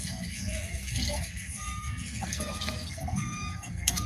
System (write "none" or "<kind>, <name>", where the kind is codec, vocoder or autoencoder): codec, SNAC